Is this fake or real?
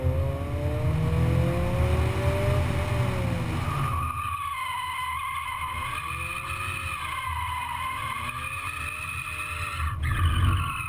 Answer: real